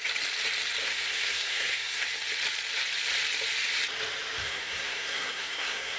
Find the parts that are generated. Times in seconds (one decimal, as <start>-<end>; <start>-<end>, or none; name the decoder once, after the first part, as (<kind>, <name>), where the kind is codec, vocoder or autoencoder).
0.8-2.0 (codec, SNAC); 4.4-6.0